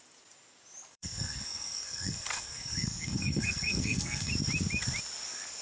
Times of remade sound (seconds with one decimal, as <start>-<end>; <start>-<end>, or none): 0.9-4.3